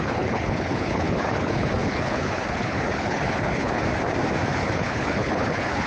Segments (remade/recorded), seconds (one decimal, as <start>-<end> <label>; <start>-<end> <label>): 0.0-3.8 remade; 3.8-4.5 recorded; 4.5-5.9 remade

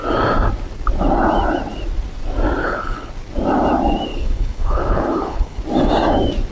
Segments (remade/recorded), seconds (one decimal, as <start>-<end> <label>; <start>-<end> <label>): 0.0-2.6 recorded; 2.6-3.1 remade; 3.1-4.1 recorded; 4.1-5.6 remade; 5.6-6.5 recorded

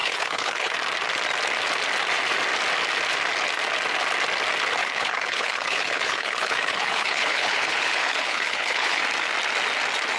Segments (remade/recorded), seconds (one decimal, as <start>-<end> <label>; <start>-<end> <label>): 0.0-0.7 remade; 0.7-4.8 recorded; 4.8-9.0 remade; 9.0-10.2 recorded

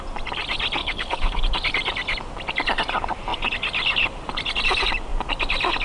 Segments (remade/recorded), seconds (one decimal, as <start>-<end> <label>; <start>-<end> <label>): 0.0-0.8 recorded; 0.8-1.4 remade; 1.4-5.8 recorded

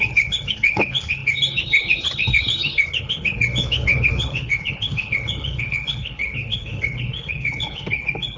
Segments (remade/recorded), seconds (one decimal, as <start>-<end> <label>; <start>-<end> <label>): 0.0-8.4 remade